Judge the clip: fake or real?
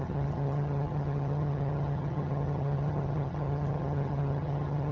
fake